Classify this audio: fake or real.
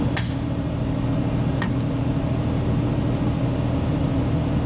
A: real